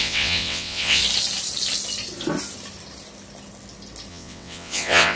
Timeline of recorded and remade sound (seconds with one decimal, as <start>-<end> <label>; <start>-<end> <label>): 0.0-1.0 remade; 1.0-4.1 recorded; 4.1-5.2 remade